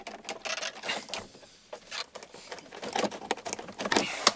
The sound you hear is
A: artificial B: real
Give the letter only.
B